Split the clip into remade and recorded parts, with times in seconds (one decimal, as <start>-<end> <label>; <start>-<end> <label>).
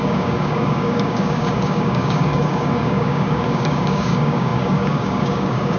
0.0-5.8 remade